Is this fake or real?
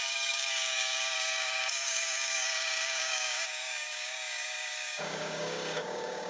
fake